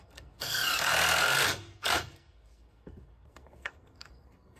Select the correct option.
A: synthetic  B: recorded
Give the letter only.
A